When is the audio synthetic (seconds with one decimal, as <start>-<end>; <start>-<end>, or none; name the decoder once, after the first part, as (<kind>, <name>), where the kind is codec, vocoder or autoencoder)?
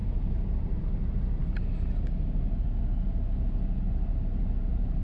0.0-0.8 (vocoder, BigVGAN v2)